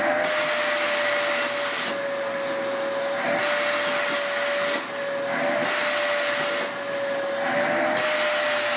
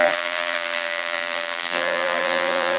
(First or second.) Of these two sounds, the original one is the first